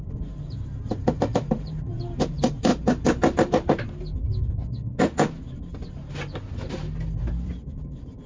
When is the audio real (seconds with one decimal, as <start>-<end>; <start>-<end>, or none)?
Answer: 2.7-7.7